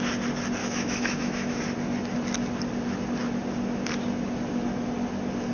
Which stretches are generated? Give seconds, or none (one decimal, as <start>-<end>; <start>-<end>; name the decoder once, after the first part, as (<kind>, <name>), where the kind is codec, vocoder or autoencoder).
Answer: 0.6-1.6 (autoencoder, DAC-VAE)